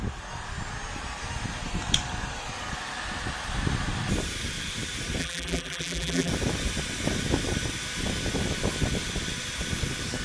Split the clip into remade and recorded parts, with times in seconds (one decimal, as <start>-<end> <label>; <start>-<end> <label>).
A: 0.0-5.2 recorded; 5.2-6.3 remade; 6.3-10.2 recorded